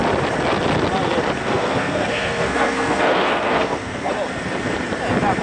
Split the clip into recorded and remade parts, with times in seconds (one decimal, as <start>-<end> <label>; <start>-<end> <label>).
0.0-1.4 recorded; 1.4-4.1 remade; 4.1-5.4 recorded